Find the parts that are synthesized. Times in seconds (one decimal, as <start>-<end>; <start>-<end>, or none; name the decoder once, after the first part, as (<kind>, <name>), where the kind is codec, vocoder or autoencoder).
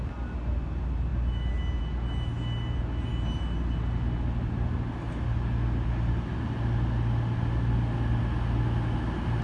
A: none